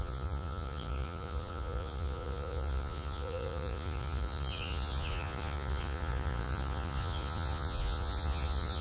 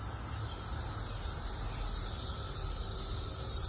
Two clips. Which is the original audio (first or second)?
second